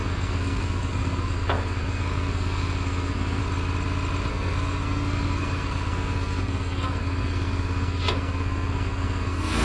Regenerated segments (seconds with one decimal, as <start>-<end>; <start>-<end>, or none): 0.0-3.4; 4.3-9.6